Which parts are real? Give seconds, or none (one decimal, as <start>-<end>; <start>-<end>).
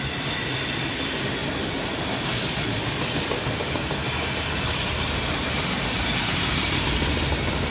0.0-7.7